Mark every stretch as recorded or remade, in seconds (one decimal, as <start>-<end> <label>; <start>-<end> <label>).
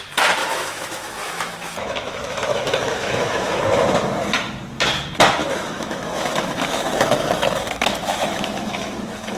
0.0-0.4 recorded; 0.4-3.6 remade; 3.6-5.4 recorded; 5.4-9.4 remade